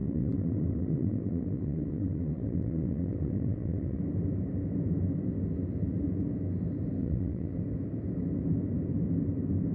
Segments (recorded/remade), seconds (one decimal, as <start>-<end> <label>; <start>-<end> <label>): 0.0-4.0 remade; 4.0-7.0 recorded; 7.0-7.6 remade; 7.6-9.7 recorded